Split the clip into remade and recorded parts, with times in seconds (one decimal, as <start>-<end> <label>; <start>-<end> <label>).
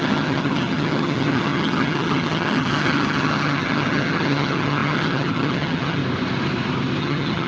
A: 0.0-6.0 remade; 6.0-7.0 recorded; 7.0-7.5 remade